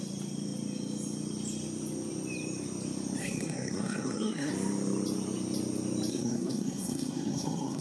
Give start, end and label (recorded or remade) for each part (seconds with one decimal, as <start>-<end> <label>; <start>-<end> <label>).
0.0-3.2 recorded; 3.2-4.5 remade; 4.5-6.1 recorded; 6.1-7.8 remade